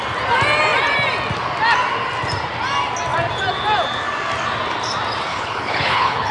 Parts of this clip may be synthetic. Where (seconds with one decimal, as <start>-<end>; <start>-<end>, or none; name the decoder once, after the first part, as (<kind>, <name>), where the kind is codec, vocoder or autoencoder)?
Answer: 5.3-6.3 (codec, HILCodec)